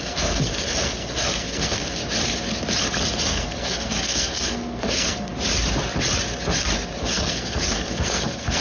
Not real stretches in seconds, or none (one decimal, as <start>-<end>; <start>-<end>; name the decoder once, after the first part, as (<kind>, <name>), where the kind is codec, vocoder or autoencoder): 0.0-2.0 (codec, SNAC); 3.2-5.3; 7.0-8.6